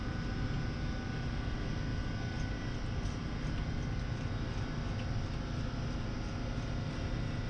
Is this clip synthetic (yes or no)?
no